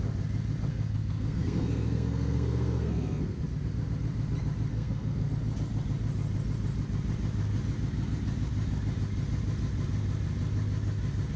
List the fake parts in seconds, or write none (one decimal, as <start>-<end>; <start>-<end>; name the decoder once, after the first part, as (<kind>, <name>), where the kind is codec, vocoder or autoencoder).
0.7-3.4 (codec, SNAC); 4.7-5.3